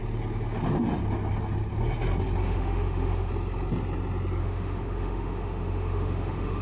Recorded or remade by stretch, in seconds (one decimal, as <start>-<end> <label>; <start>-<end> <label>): 0.0-2.4 recorded; 2.4-3.3 remade; 3.3-4.4 recorded; 4.4-6.6 remade